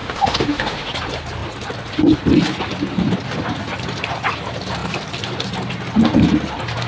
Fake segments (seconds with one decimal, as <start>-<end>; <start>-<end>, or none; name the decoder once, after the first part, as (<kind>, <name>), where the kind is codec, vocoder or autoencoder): 0.0-0.9 (autoencoder, DAC-VAE)